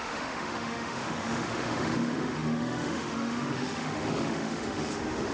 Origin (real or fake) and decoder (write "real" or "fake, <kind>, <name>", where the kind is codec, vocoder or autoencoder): fake, autoencoder, DAC-VAE